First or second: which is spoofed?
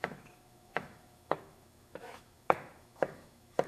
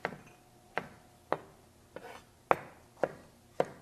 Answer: first